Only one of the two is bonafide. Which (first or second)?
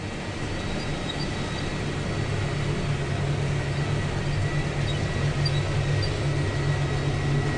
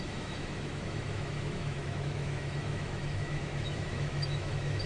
first